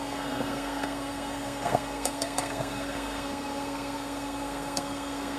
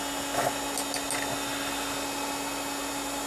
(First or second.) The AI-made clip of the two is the first